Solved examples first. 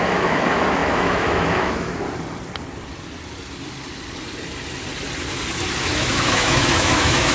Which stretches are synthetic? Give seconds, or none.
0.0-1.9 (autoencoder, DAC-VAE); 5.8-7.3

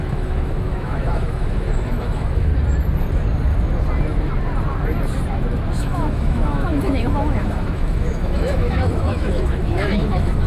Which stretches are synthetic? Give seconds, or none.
0.0-2.5 (autoencoder, DAC-VAE); 5.8-10.5

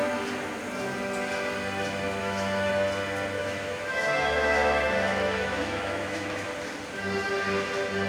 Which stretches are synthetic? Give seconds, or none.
2.2-2.7 (autoencoder, DAC-VAE); 3.4-6.5

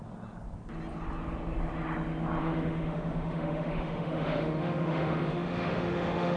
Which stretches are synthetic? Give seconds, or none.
2.4-6.4 (autoencoder, DAC-VAE)

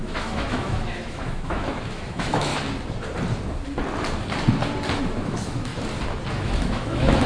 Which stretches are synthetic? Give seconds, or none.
0.0-2.5 (autoencoder, DAC-VAE); 5.0-5.7; 6.3-7.3

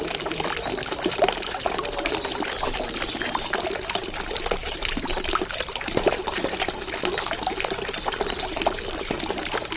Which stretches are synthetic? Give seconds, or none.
none

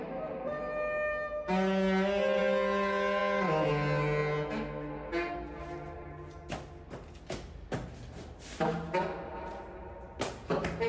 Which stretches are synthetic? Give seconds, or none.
none

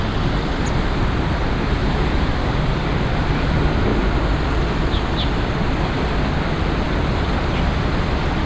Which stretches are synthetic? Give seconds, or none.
none